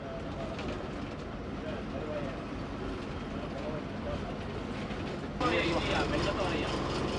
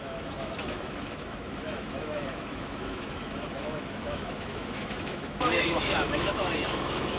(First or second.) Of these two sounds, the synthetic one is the second